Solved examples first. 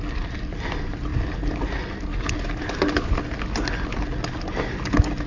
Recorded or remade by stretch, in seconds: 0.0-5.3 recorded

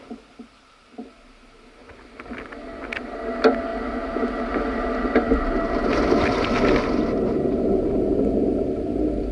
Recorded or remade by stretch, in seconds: 0.0-9.3 recorded

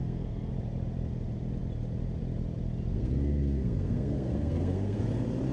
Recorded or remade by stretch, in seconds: 0.0-0.5 remade; 0.5-2.9 recorded; 2.9-5.0 remade; 5.0-5.5 recorded

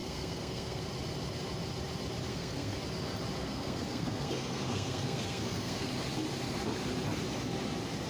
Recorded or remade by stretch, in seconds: 0.0-0.8 remade; 0.8-2.3 recorded; 2.3-2.8 remade; 2.8-3.4 recorded; 3.4-5.9 remade; 5.9-8.1 recorded

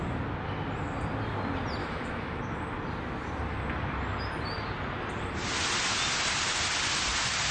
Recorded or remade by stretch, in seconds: 0.0-1.8 recorded; 1.8-2.4 remade; 2.4-7.5 recorded

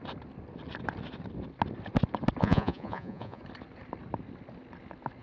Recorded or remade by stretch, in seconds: 0.0-2.4 recorded; 2.4-3.4 remade; 3.4-5.2 recorded

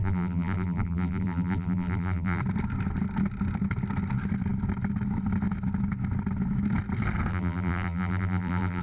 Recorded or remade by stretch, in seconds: 0.0-2.4 remade; 2.4-7.3 recorded; 7.3-8.8 remade

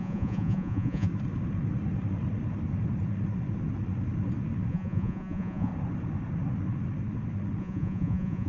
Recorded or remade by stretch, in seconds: 0.0-1.1 remade; 1.1-4.7 recorded; 4.7-5.7 remade; 5.7-7.6 recorded; 7.6-8.5 remade